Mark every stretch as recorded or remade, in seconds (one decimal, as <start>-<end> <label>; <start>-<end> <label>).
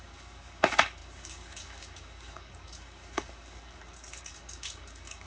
0.0-5.3 remade